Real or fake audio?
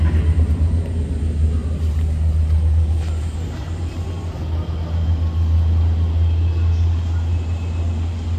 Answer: real